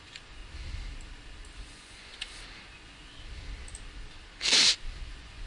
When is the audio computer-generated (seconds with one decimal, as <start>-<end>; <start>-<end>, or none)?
0.0-0.4; 1.6-2.1; 2.7-3.1; 5.0-5.5